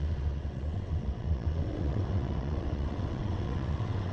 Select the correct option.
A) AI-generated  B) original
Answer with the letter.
A